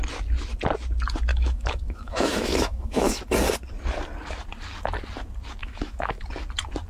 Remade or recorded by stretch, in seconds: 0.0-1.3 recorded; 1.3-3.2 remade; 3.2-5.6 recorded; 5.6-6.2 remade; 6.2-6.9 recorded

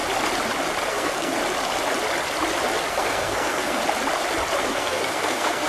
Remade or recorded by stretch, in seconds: 0.0-0.9 recorded; 0.9-1.4 remade; 1.4-2.9 recorded; 2.9-3.8 remade; 3.8-4.6 recorded; 4.6-5.7 remade

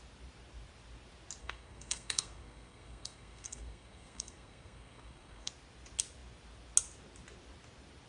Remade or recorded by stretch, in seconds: 0.0-1.4 recorded; 1.4-5.5 remade; 5.5-8.1 recorded

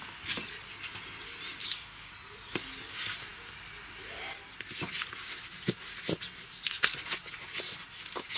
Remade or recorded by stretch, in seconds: 0.0-1.6 recorded; 1.6-2.1 remade; 2.1-8.4 recorded

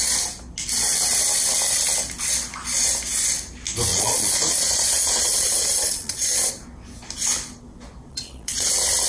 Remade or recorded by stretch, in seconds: 0.0-3.9 recorded; 3.9-6.5 remade; 6.5-8.1 recorded; 8.1-8.7 remade; 8.7-9.1 recorded

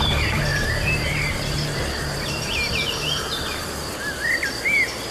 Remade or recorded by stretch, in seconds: 0.0-0.5 recorded; 0.5-3.6 remade; 3.6-5.1 recorded